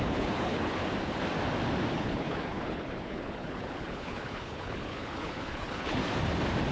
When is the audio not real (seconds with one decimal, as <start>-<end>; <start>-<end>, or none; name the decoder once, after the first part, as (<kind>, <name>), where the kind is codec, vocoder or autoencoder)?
0.0-0.8 (codec, HILCodec); 1.9-6.0